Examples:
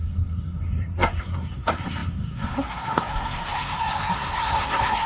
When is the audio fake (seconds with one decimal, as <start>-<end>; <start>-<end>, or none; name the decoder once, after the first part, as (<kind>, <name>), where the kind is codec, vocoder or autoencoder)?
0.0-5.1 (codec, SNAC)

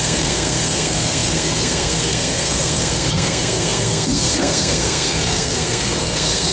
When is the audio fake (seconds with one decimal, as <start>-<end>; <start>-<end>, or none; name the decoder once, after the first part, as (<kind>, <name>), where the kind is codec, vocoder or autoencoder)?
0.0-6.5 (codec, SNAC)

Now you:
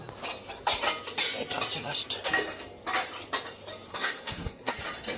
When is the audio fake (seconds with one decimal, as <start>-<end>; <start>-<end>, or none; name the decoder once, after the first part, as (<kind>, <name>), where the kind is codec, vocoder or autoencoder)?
3.9-4.7 (codec, SNAC)

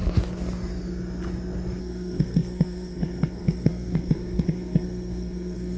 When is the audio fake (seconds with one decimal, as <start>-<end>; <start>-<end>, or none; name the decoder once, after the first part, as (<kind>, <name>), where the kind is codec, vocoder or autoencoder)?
1.8-5.8 (codec, SNAC)